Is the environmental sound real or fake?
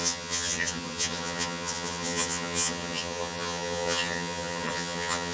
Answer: fake